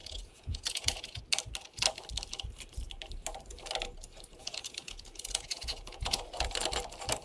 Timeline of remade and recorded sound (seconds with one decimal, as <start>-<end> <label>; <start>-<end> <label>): 0.0-1.2 remade; 1.2-4.4 recorded; 4.4-6.2 remade; 6.2-7.2 recorded